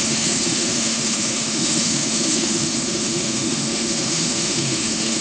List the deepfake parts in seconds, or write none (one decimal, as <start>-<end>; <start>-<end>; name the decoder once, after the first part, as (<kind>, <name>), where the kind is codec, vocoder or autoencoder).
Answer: 0.0-5.2 (autoencoder, DAC-VAE)